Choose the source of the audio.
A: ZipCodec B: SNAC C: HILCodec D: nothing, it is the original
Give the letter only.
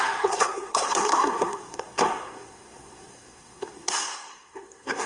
B